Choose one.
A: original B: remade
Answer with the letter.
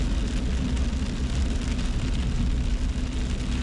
A